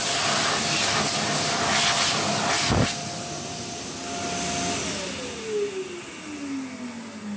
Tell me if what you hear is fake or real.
real